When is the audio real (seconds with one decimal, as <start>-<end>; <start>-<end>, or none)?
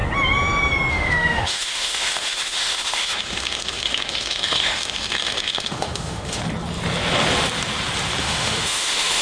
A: 0.0-0.9; 6.4-8.2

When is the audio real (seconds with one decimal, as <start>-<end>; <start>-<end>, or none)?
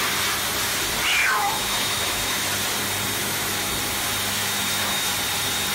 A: 0.0-1.2; 2.5-3.2; 3.7-4.4; 5.1-5.7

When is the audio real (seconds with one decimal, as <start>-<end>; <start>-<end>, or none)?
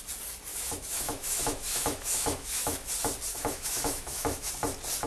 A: 0.0-0.5; 2.9-3.3; 4.5-5.1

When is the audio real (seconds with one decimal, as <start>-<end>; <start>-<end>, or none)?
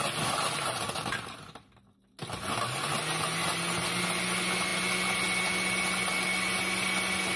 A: 0.0-7.4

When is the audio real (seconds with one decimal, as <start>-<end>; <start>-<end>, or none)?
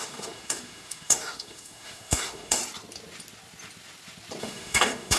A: 2.6-4.4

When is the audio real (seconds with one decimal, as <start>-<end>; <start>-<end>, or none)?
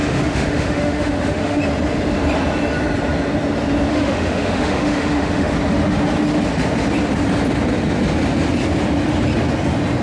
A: 1.6-3.9; 5.5-10.0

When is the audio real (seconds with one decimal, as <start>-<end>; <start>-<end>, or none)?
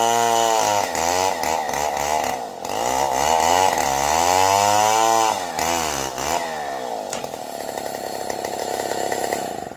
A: 0.0-8.6; 9.2-9.8